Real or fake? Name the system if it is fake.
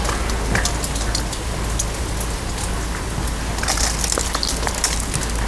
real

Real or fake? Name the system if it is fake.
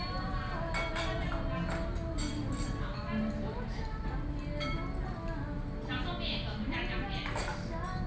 real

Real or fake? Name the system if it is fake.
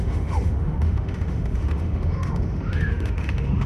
fake, autoencoder, DAC-VAE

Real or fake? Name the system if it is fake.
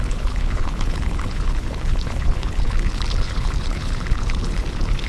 fake, codec, HILCodec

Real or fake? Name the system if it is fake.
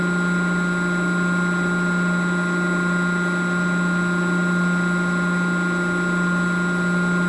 real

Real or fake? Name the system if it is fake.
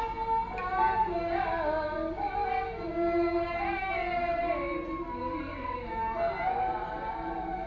real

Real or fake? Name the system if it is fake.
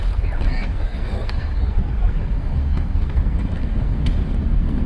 fake, codec, SNAC